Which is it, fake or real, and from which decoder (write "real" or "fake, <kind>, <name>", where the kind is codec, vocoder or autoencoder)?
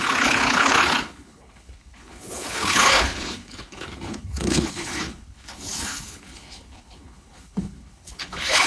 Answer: fake, codec, HILCodec